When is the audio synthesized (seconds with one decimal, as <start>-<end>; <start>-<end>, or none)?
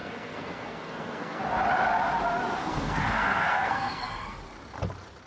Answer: 0.0-1.4; 2.6-4.4